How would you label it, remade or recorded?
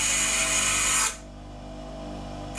recorded